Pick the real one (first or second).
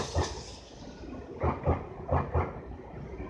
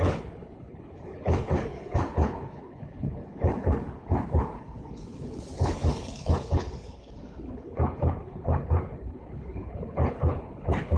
first